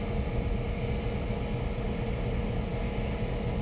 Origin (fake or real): real